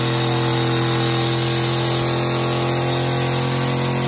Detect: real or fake real